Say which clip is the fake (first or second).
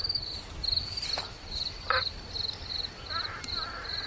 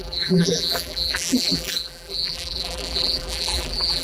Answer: second